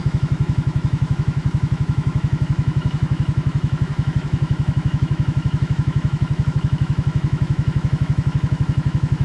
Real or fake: fake